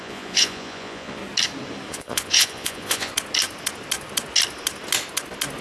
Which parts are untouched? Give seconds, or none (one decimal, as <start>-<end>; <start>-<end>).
1.2-1.9; 3.1-5.6